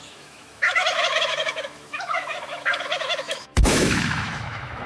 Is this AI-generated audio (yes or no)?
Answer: yes